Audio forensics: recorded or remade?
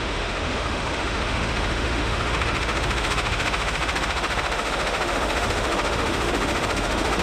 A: remade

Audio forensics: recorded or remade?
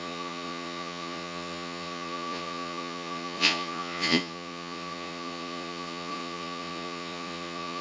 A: remade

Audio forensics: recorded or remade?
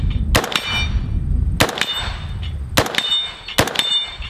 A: recorded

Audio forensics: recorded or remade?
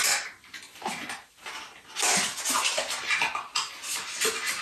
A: recorded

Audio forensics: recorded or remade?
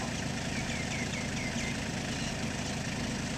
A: recorded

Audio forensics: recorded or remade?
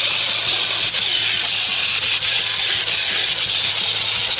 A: recorded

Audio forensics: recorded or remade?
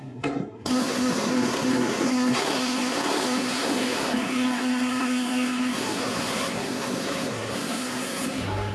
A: remade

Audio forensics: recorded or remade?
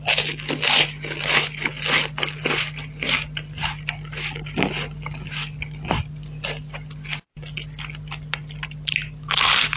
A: recorded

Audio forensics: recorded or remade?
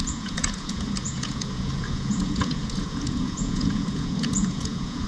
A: remade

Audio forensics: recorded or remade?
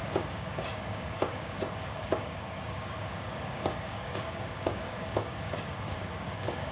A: remade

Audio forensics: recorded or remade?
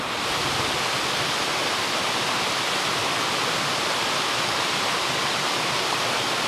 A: recorded